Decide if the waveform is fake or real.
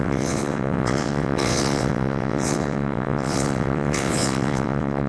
fake